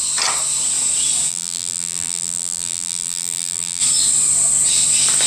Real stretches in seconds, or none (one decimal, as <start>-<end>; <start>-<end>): 0.0-1.3; 3.8-5.3

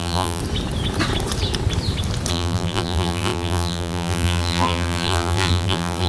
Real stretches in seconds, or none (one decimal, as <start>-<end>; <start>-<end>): 0.4-2.3

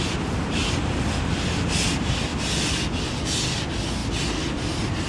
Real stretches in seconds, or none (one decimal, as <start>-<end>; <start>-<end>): 0.0-5.1

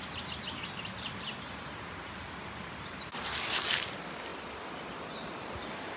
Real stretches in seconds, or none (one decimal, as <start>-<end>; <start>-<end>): 0.0-6.0

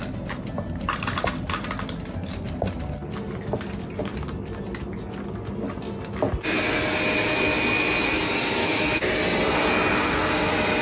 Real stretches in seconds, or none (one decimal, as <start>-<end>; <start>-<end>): 0.0-8.6; 9.1-10.8